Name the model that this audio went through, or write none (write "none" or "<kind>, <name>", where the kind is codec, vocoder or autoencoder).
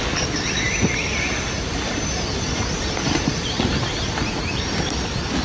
none